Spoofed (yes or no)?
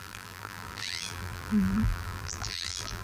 yes